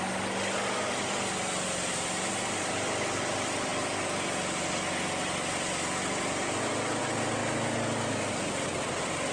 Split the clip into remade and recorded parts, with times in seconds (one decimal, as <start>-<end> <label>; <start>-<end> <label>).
0.0-9.3 recorded